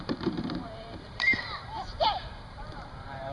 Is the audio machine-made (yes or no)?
yes